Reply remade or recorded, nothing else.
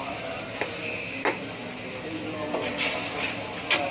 recorded